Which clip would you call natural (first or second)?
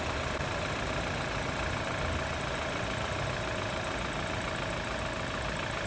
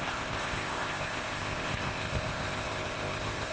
first